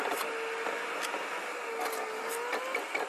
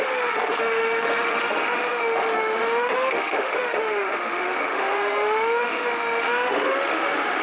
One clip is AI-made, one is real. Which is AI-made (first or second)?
second